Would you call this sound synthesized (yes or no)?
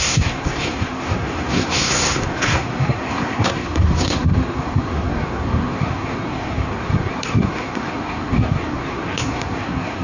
yes